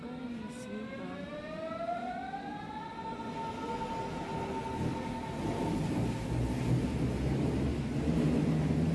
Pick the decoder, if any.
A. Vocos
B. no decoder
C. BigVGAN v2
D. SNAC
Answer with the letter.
B